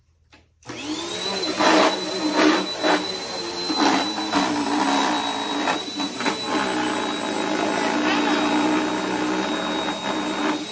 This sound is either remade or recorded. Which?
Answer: recorded